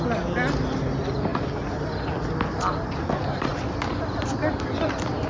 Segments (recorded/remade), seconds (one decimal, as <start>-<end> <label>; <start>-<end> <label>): 0.0-5.3 recorded